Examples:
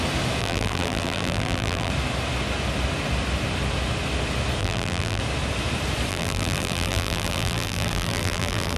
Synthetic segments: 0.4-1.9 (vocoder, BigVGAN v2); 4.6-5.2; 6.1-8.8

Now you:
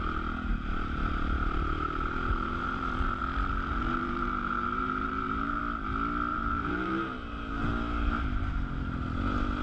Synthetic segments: 0.5-3.2 (vocoder, BigVGAN v2); 3.7-5.6; 6.3-7.6

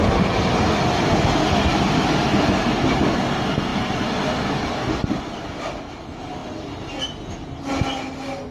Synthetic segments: 3.7-5.1 (vocoder, BigVGAN v2)

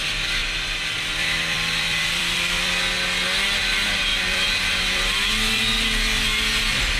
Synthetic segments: 0.4-2.7 (vocoder, BigVGAN v2); 4.1-5.6

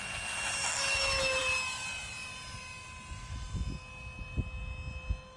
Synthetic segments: none

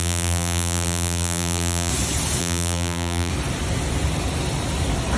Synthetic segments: 0.0-1.9 (vocoder, BigVGAN v2); 2.4-3.3

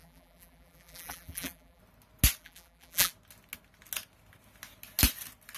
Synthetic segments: 0.0-1.8 (vocoder, BigVGAN v2); 2.4-3.1

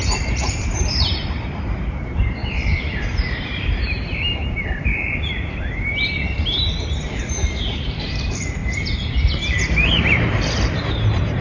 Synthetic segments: 0.0-11.4 (vocoder, BigVGAN v2)